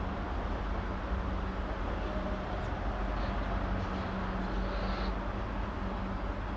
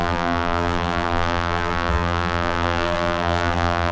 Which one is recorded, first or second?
first